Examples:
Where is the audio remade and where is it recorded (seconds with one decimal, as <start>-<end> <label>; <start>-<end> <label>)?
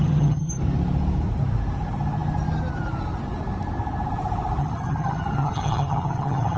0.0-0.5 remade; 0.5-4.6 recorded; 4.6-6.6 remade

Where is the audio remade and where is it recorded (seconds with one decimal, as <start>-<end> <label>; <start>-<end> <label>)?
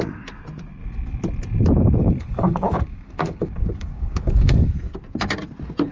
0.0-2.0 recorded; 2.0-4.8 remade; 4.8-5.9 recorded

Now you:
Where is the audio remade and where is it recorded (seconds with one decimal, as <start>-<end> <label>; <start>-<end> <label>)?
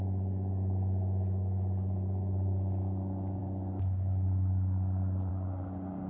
0.0-6.1 recorded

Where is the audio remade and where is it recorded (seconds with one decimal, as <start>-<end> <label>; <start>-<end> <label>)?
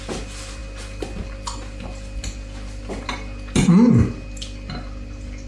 0.0-5.5 recorded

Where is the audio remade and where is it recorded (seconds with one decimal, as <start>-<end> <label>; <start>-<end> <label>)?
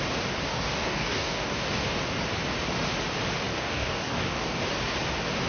0.0-0.5 recorded; 0.5-2.0 remade; 2.0-3.5 recorded; 3.5-4.6 remade; 4.6-5.5 recorded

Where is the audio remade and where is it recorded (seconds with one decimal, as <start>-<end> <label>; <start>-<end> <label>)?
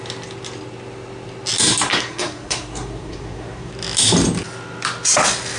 0.0-1.9 recorded; 1.9-3.7 remade; 3.7-5.6 recorded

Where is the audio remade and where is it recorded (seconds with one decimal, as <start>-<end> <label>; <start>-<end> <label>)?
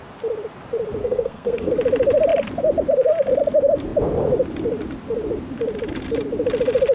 0.0-1.0 recorded; 1.0-1.7 remade; 1.7-6.9 recorded